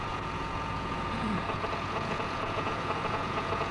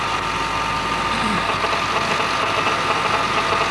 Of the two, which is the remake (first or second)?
first